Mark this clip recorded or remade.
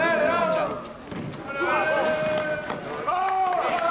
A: recorded